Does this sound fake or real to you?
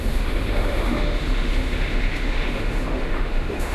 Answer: fake